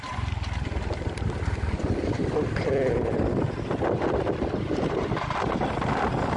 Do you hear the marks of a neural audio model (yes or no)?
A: no